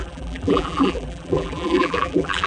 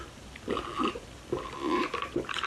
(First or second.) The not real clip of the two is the first